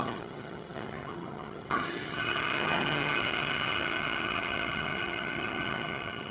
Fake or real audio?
fake